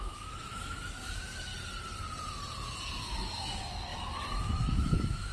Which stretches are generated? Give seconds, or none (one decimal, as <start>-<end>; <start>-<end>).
0.0-1.5; 3.0-5.3